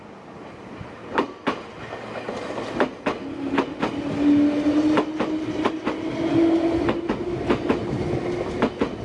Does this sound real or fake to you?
real